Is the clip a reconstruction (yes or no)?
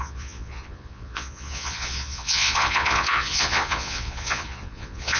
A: yes